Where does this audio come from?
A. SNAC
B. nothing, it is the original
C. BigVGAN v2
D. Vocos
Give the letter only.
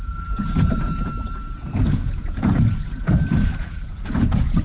D